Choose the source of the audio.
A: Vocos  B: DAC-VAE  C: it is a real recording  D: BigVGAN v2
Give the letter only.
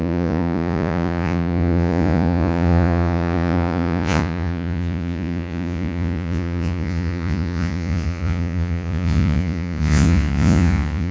A